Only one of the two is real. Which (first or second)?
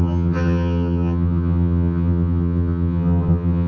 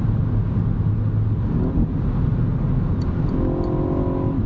second